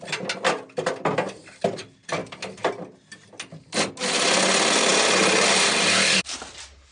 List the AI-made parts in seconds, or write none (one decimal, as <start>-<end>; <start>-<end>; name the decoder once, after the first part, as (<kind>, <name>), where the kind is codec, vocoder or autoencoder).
none